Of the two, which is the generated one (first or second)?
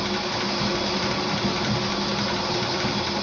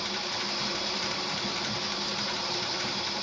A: second